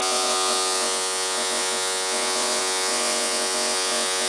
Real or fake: fake